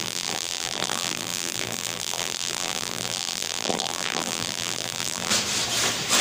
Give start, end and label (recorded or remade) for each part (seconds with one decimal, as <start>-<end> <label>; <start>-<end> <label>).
0.0-5.3 remade; 5.3-6.2 recorded